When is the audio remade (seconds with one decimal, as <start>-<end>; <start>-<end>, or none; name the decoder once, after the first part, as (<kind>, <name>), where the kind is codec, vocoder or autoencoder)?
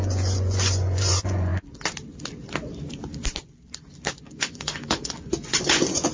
0.0-1.5 (vocoder, Vocos); 4.2-6.1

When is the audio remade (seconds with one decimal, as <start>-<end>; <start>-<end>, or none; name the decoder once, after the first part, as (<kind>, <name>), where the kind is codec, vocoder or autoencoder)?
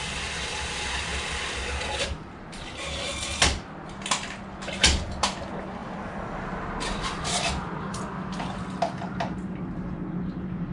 5.8-8.0 (vocoder, BigVGAN v2)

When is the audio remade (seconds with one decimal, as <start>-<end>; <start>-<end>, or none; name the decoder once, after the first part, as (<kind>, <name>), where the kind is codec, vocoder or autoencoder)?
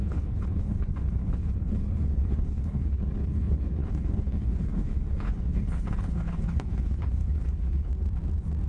0.0-7.9 (codec, HILCodec)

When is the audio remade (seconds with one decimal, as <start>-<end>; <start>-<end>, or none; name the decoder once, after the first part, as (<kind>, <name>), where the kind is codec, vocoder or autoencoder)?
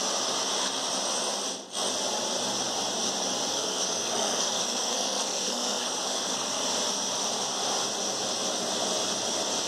3.5-6.6 (codec, SNAC)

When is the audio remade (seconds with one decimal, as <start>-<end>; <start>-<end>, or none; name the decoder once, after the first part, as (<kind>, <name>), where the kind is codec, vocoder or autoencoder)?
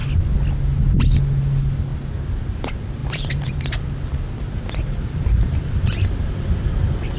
3.0-7.2 (vocoder, BigVGAN v2)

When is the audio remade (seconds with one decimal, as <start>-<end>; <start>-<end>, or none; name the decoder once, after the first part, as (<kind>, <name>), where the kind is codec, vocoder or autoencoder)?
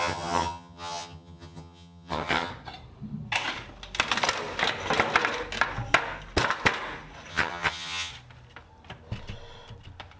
0.0-2.5 (vocoder, HiFi-GAN); 7.3-8.1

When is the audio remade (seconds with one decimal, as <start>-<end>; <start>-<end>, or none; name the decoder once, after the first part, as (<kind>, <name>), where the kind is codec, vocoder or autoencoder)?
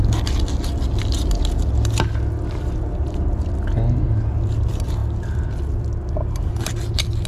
none